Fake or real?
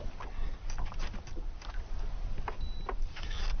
real